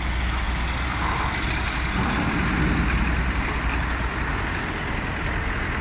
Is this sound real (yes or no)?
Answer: yes